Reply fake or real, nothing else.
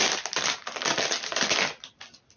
real